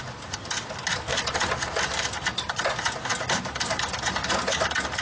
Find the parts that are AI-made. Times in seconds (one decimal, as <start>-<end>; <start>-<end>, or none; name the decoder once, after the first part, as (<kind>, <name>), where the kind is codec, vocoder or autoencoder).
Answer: 1.1-2.6 (vocoder, BigVGAN v2)